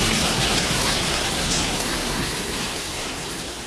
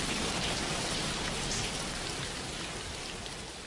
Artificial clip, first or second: first